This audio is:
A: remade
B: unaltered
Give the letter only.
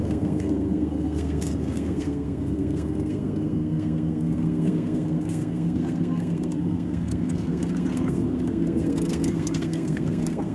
A